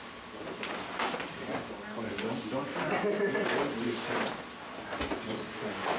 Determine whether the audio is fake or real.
real